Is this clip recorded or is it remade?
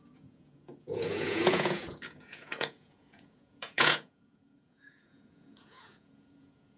remade